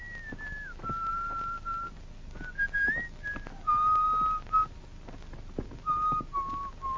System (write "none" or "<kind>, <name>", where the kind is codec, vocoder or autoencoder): none